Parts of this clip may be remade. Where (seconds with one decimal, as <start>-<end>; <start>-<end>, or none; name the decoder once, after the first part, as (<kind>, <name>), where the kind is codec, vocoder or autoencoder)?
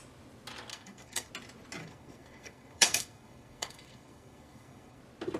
0.7-1.3 (codec, SNAC); 1.8-5.0